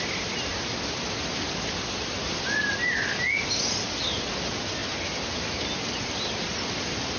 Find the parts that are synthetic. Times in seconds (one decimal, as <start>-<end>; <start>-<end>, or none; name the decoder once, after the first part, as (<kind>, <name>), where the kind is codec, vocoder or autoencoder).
none